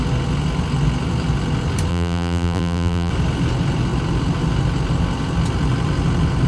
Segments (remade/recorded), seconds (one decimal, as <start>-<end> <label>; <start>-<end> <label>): 0.0-1.9 recorded; 1.9-3.1 remade; 3.1-6.5 recorded